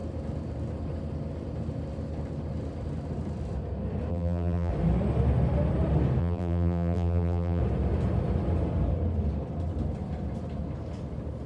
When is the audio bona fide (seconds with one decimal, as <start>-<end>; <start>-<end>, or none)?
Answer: 0.0-4.1; 4.7-6.2; 7.6-11.5